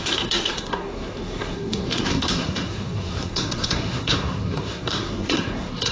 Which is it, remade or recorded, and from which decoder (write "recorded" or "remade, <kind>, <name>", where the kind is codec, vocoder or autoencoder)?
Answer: remade, codec, SNAC